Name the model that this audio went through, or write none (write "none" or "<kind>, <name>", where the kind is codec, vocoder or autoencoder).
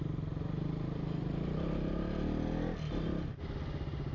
none